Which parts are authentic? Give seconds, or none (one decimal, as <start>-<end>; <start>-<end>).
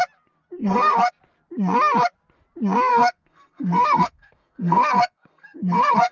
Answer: 0.0-0.6; 1.1-2.9